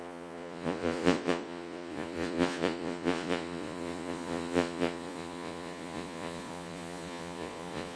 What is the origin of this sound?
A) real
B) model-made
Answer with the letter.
B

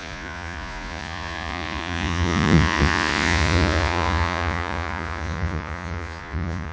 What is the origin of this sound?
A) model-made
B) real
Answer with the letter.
A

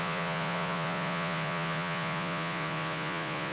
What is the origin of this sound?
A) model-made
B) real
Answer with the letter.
A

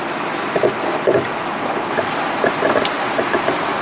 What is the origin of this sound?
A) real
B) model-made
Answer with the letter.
A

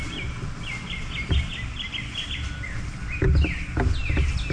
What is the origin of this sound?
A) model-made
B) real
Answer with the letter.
B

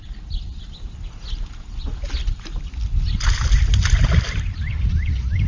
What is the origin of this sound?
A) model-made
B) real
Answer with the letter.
B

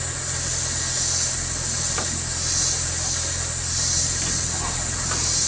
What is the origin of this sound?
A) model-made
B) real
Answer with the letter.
B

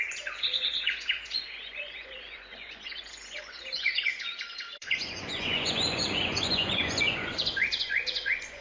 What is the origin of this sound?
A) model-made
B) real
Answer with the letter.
A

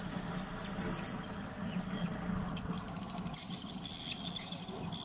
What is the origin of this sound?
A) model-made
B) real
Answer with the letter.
B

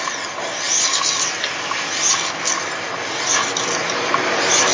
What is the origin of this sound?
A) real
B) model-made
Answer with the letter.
A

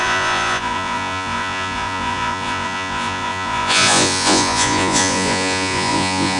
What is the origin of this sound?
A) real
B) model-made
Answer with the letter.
B